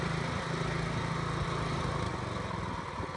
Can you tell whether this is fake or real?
real